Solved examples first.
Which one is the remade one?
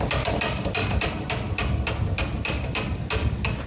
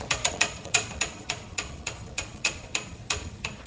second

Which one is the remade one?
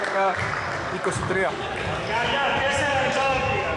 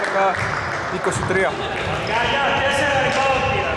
first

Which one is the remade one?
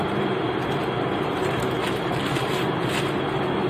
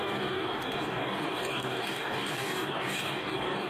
second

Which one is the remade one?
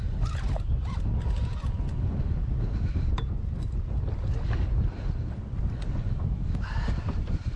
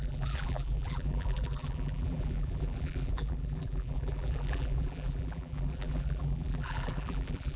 second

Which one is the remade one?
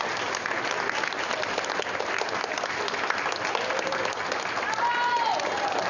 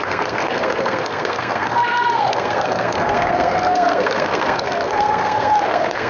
second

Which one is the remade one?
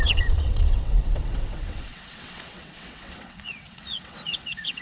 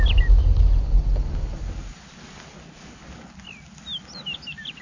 first